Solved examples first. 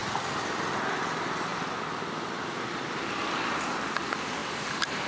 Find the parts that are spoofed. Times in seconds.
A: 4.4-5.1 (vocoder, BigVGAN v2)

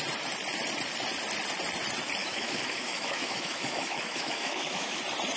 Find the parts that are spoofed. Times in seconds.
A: 2.2-5.0 (autoencoder, DAC-VAE)

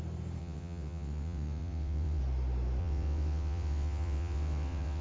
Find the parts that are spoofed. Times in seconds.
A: 0.4-2.2 (vocoder, WaveNeXt); 2.8-5.0

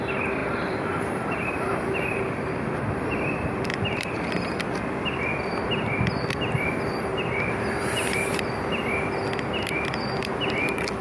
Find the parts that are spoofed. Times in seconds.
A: 0.4-4.3 (vocoder, BigVGAN v2); 7.1-8.5

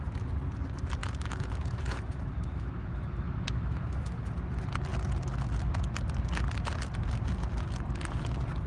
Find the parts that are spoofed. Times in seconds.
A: 1.0-4.3 (autoencoder, DAC-VAE)